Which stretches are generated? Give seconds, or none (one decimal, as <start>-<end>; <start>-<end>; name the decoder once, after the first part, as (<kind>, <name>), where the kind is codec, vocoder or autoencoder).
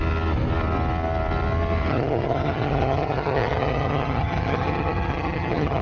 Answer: 1.9-5.8 (vocoder, HiFi-GAN)